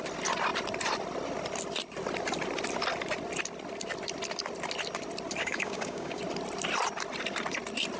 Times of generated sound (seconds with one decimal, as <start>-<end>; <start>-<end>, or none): 5.4-6.2